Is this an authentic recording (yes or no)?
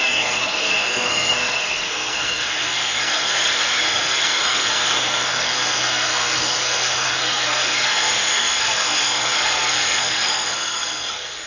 no